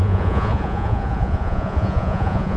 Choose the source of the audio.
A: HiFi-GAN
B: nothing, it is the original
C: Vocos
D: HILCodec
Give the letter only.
C